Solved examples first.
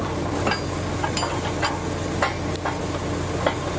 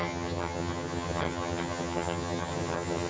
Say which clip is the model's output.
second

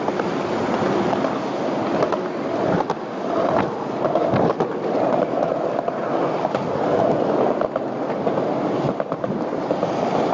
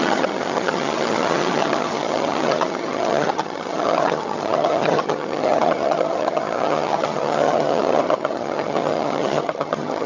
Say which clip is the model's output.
second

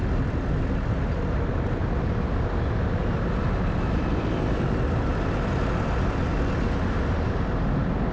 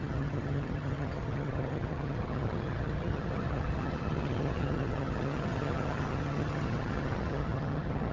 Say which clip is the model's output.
second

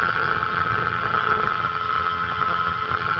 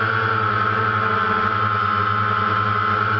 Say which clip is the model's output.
first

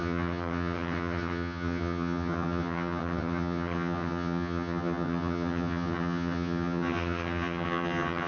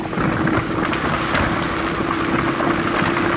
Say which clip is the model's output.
first